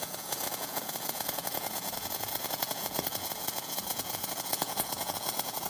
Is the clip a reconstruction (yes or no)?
yes